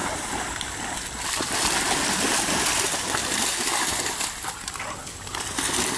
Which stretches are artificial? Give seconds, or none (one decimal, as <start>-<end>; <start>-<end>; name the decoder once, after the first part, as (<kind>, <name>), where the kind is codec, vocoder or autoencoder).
none